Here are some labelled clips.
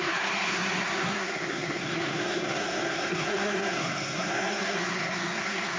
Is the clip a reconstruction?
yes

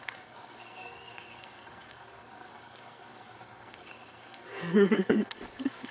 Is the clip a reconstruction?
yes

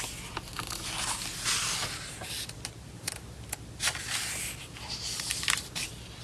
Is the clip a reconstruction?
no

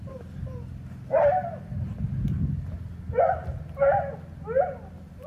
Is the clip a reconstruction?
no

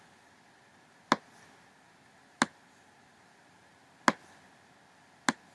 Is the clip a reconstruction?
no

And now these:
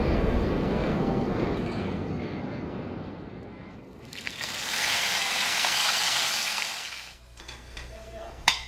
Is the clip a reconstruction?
yes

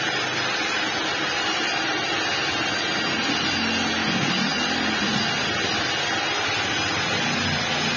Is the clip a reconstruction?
no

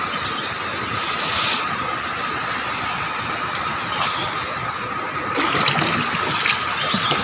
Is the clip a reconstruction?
no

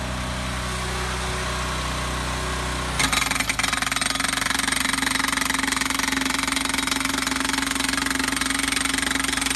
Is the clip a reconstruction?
no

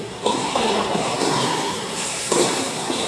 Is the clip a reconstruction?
yes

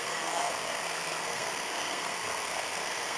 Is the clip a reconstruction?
yes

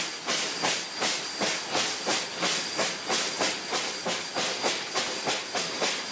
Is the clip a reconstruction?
no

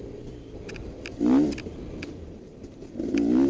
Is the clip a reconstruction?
no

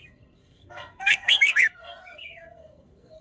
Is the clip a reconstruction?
yes